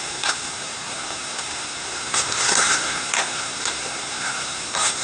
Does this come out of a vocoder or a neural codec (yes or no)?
yes